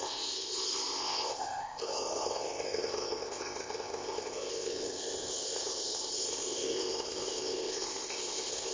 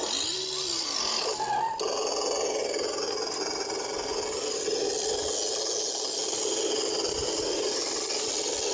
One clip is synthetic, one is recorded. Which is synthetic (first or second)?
first